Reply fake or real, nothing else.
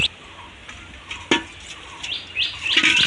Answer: real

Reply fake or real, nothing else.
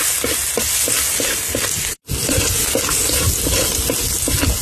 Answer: real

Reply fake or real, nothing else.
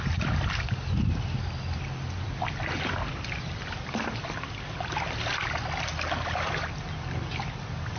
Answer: real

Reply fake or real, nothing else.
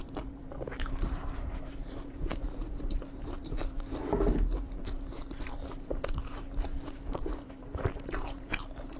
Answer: fake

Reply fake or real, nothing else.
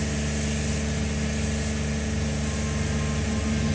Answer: real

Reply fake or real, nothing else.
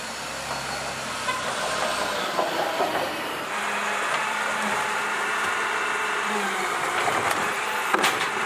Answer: fake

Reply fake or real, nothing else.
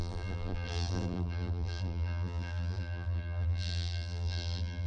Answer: fake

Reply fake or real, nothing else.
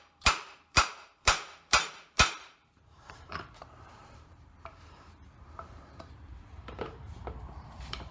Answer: fake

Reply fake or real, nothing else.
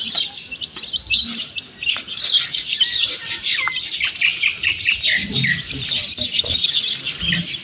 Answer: real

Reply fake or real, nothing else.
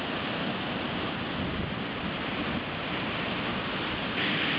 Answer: real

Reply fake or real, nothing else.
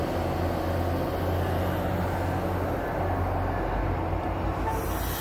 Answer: real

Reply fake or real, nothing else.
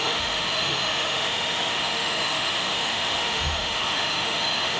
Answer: fake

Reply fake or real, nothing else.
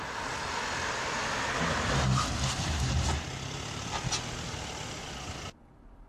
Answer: real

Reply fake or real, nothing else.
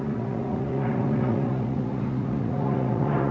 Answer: fake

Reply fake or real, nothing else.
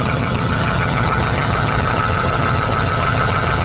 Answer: fake